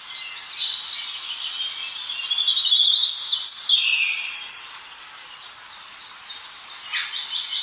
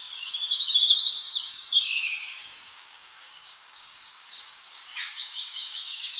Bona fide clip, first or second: first